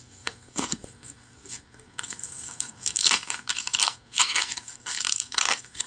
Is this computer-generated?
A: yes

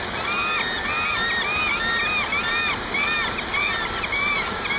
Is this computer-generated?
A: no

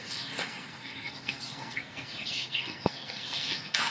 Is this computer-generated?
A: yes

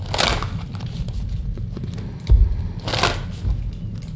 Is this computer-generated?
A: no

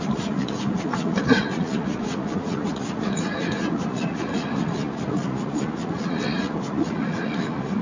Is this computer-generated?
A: yes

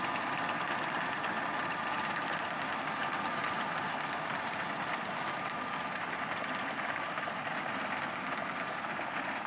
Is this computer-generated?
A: no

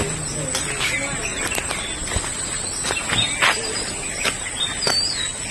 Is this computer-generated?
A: no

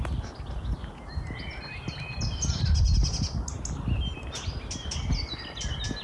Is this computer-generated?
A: no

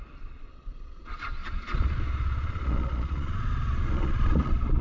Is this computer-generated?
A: yes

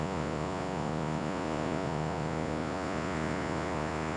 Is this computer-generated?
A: yes